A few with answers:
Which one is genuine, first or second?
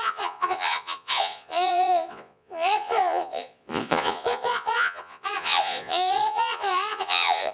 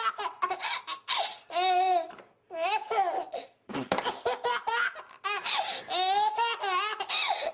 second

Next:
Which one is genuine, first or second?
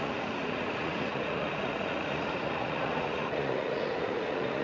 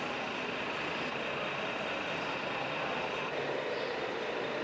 second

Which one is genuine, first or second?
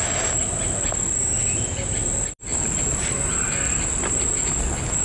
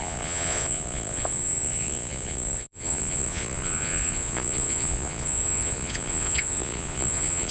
first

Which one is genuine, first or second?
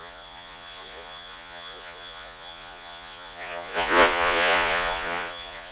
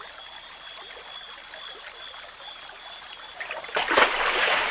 second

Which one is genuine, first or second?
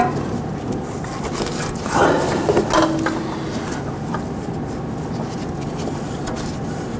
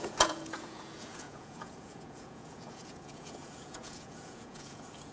first